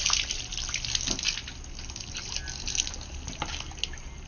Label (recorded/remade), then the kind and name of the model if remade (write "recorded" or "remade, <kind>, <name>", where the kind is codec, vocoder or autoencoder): recorded